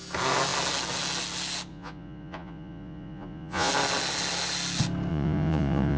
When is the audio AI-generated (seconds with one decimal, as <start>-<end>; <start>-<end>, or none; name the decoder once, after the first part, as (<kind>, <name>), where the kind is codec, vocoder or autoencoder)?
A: 1.7-3.7 (vocoder, Vocos); 5.1-6.0